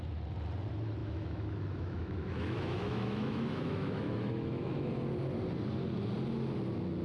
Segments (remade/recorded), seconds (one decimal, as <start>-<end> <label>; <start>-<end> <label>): 0.0-1.0 recorded; 1.0-4.9 remade; 4.9-7.0 recorded